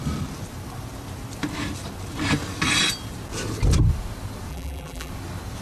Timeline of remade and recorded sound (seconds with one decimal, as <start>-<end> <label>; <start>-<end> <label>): 0.0-4.5 recorded; 4.5-5.1 remade; 5.1-5.6 recorded